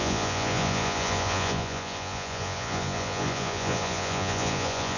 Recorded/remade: remade